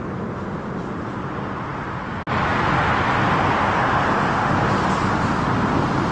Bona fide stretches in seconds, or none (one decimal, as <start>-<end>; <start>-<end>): 0.0-6.1